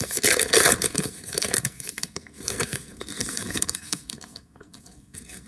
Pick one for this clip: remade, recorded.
remade